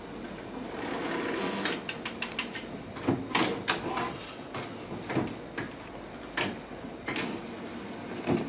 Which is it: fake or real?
real